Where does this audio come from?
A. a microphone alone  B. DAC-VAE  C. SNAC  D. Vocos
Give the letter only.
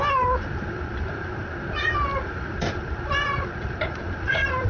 A